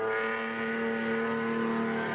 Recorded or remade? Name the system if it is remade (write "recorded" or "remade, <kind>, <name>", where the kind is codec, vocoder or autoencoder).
recorded